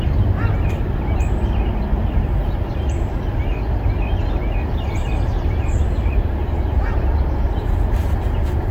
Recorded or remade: recorded